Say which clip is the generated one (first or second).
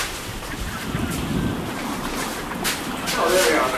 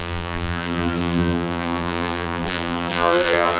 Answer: second